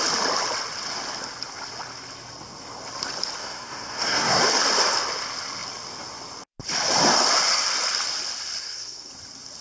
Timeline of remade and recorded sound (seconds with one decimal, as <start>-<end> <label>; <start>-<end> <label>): 0.0-3.4 recorded; 3.4-4.4 remade; 4.4-8.6 recorded; 8.6-9.1 remade; 9.1-9.6 recorded